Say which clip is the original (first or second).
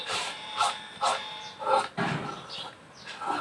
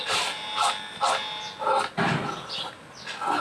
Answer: second